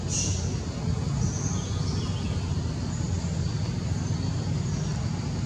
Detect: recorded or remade recorded